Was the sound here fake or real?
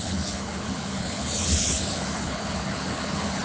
fake